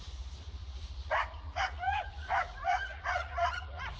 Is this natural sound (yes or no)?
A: no